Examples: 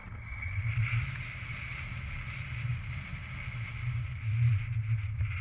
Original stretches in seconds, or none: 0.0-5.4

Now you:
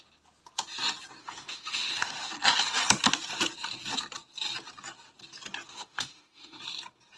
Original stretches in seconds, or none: 0.0-1.2; 2.3-5.7; 6.6-7.2

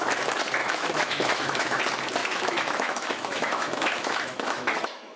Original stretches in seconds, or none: 0.0-0.6; 1.8-2.2

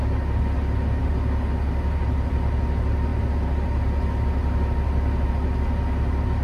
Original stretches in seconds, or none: 0.0-6.4

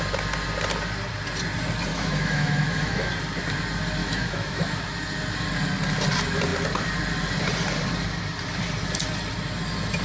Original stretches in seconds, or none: 0.0-1.9; 3.1-4.0; 4.8-10.0

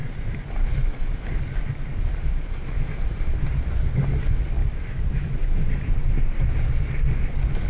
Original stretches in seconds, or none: 0.0-4.6; 5.7-7.7